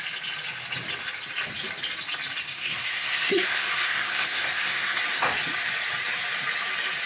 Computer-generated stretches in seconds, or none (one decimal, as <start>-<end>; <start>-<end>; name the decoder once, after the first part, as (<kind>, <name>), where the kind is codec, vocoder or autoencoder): 2.5-5.0 (codec, SNAC)